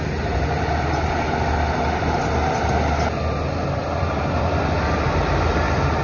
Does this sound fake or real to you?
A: real